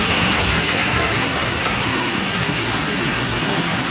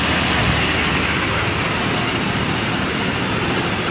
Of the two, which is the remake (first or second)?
first